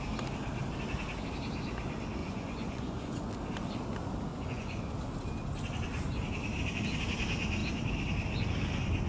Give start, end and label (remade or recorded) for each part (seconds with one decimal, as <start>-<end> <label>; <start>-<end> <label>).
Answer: 0.0-2.2 recorded; 2.2-3.3 remade; 3.3-4.3 recorded; 4.3-4.8 remade; 4.8-9.1 recorded